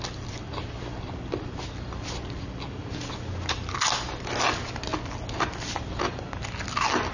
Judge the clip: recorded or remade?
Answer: recorded